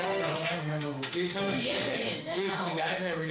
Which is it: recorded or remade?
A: remade